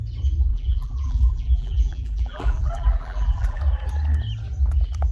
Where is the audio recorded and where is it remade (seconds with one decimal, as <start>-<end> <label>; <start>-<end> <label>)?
0.0-0.5 recorded; 0.5-3.6 remade; 3.6-5.1 recorded